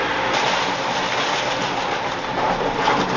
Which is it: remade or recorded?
recorded